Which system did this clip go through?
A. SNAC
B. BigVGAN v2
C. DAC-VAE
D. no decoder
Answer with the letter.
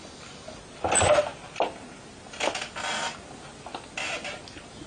D